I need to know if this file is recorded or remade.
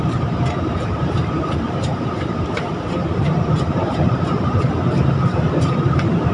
remade